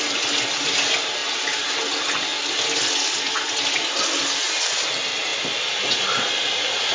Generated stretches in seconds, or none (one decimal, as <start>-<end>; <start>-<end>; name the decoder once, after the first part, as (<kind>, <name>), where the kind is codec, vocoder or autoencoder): none